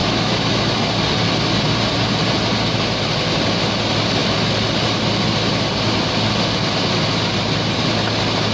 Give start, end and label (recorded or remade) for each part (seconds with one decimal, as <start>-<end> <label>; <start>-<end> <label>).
0.0-0.9 remade; 0.9-8.5 recorded

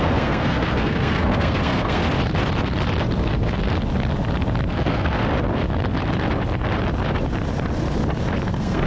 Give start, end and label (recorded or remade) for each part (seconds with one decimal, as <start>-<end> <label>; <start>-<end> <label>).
0.0-2.0 remade; 2.0-3.2 recorded; 3.2-3.6 remade; 3.6-4.7 recorded; 4.7-5.2 remade; 5.2-8.5 recorded; 8.5-8.9 remade

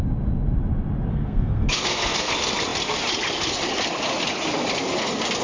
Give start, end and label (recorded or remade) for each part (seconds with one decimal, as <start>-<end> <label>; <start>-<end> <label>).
0.0-1.1 recorded; 1.1-2.3 remade; 2.3-5.4 recorded